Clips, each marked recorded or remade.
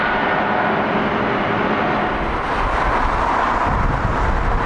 recorded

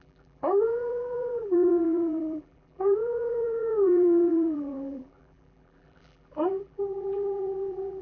remade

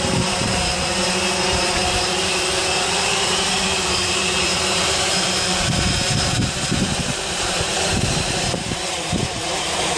remade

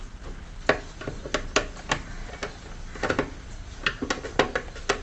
recorded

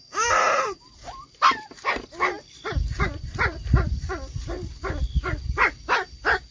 recorded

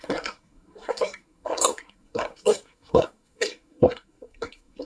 remade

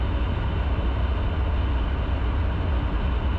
recorded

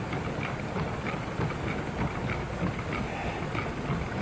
recorded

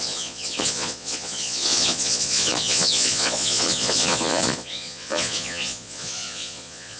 remade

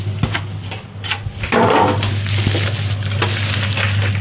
recorded